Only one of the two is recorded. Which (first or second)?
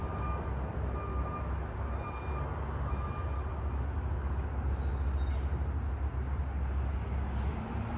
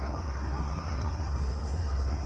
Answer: first